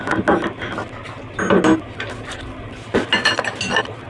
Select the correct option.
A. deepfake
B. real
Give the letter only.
B